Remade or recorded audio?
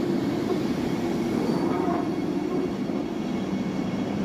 remade